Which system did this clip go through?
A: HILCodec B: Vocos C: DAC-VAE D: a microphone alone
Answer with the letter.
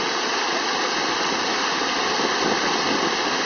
D